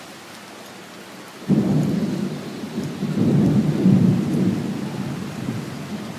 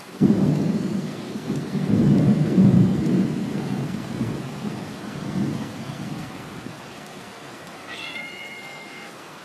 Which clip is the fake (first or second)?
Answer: second